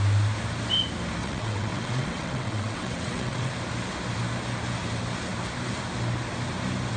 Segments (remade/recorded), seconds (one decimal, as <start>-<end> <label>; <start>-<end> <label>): 0.0-1.2 recorded; 1.2-3.5 remade; 3.5-7.0 recorded